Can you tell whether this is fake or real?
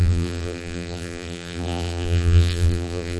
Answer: fake